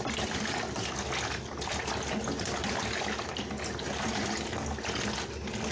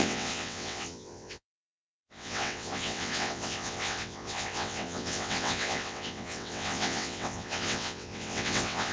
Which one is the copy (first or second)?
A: second